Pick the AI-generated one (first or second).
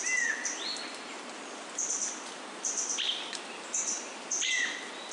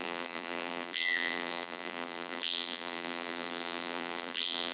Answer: second